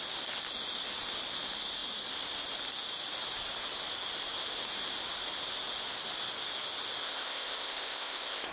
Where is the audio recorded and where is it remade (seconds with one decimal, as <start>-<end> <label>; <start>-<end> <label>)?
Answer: 0.0-7.0 recorded; 7.0-8.5 remade